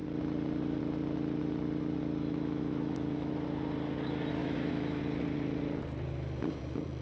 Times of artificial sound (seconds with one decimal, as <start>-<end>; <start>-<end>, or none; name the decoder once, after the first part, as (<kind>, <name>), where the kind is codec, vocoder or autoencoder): 2.2-3.3 (autoencoder, DAC-VAE); 4.4-5.0